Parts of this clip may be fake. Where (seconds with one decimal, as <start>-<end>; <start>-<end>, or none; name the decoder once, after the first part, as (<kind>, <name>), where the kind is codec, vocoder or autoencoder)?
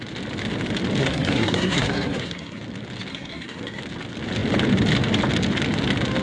1.0-2.6 (codec, SNAC); 3.1-3.8